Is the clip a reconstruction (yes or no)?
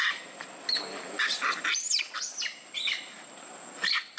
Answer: no